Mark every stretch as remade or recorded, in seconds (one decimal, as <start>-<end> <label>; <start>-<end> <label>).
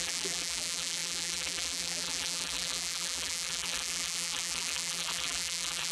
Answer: 0.0-5.9 remade